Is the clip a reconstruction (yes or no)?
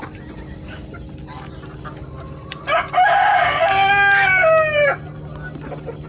no